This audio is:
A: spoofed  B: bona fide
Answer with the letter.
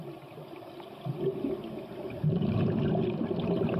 B